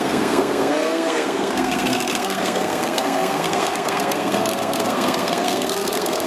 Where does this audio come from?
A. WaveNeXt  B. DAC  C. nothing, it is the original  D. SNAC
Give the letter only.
D